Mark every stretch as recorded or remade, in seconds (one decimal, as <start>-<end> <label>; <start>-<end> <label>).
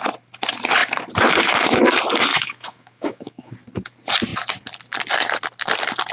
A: 0.0-2.3 recorded; 2.3-3.5 remade; 3.5-6.1 recorded